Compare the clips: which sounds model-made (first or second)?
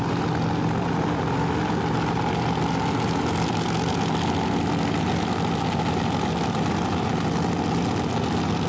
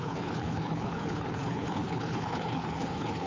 second